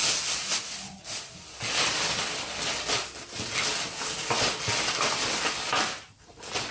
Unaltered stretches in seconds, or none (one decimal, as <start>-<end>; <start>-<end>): 0.0-6.7

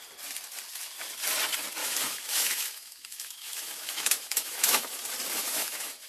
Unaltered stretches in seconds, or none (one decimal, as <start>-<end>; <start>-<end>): 0.0-1.8; 5.0-5.4

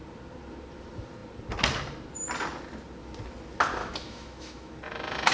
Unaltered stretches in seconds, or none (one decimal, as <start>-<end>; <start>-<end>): 0.0-3.8; 4.7-5.3